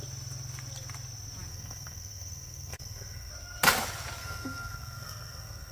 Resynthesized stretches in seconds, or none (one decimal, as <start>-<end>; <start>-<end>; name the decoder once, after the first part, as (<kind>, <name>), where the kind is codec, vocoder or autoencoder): 1.5-3.3 (codec, SNAC); 4.2-5.7